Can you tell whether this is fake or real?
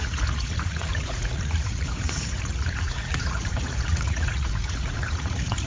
fake